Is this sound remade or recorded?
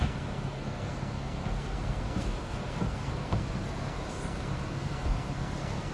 remade